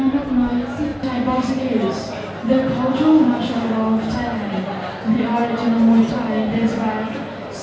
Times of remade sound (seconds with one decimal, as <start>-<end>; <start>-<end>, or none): 0.9-1.5